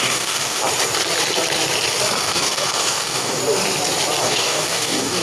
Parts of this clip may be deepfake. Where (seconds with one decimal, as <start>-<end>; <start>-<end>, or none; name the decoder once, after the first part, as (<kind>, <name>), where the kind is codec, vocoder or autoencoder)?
0.0-0.6 (codec, DAC); 2.2-3.4; 4.2-5.2